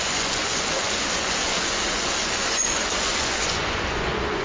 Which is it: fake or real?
fake